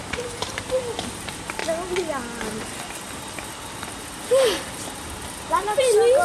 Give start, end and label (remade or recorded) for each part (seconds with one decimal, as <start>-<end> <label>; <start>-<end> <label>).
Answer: 0.0-1.6 remade; 1.6-3.2 recorded; 3.2-6.2 remade